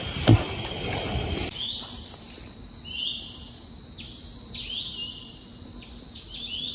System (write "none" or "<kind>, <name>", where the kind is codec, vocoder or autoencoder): none